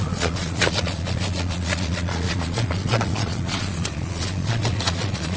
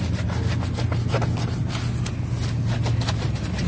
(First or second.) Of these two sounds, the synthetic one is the first